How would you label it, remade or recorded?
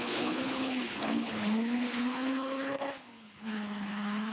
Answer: remade